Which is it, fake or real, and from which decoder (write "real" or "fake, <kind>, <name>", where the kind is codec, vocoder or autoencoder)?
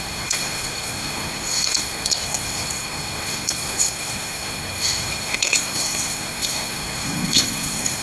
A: fake, codec, SNAC